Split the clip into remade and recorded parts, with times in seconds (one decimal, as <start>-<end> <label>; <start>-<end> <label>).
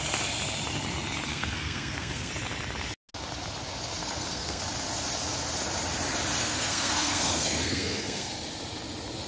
0.0-1.3 recorded; 1.3-2.3 remade; 2.3-4.0 recorded; 4.0-4.6 remade; 4.6-6.4 recorded; 6.4-8.3 remade; 8.3-9.3 recorded